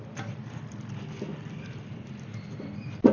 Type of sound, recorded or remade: recorded